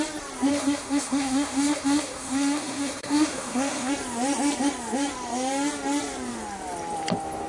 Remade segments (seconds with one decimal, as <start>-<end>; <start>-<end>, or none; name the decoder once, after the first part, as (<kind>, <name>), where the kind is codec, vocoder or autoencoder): 0.5-3.9 (codec, SNAC)